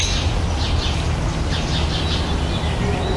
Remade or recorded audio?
recorded